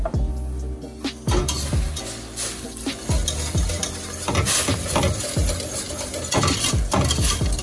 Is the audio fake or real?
real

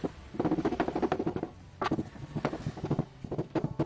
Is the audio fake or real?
real